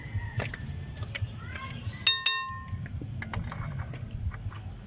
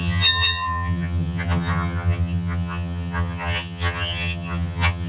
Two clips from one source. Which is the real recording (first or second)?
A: first